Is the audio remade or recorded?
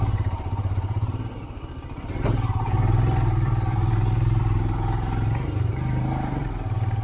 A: remade